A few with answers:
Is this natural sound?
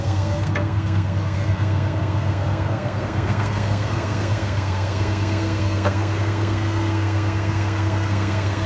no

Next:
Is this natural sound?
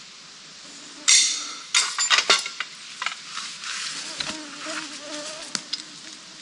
yes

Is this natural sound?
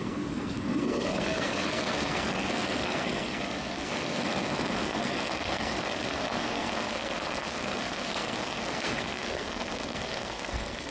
no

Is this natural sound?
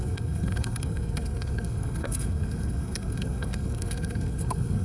no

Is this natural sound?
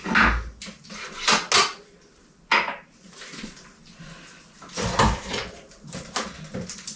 yes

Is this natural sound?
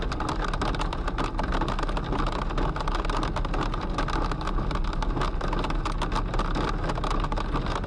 yes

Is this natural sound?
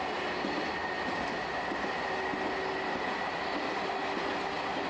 yes